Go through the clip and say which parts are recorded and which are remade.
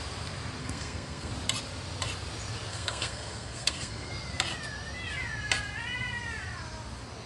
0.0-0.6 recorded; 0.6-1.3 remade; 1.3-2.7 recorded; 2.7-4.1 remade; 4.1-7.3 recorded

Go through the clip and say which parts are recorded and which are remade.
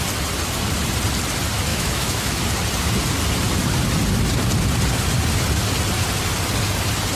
0.0-1.7 recorded; 1.7-2.4 remade; 2.4-7.2 recorded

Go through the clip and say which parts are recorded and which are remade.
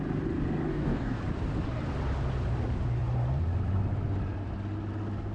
0.0-0.7 recorded; 0.7-1.2 remade; 1.2-5.3 recorded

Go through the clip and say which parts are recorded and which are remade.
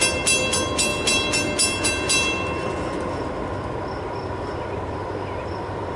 0.0-6.0 recorded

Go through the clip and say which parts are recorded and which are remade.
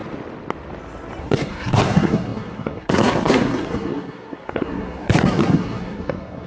0.0-1.2 recorded; 1.2-6.5 remade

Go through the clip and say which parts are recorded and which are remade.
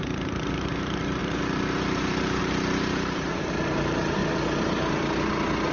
0.0-4.2 remade; 4.2-5.7 recorded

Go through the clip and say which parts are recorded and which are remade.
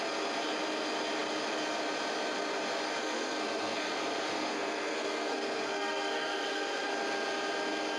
0.0-3.0 recorded; 3.0-3.9 remade; 3.9-4.3 recorded; 4.3-6.9 remade; 6.9-8.0 recorded